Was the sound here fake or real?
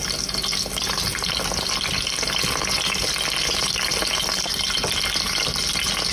real